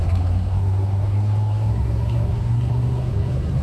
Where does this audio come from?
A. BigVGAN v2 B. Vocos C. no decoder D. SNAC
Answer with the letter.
D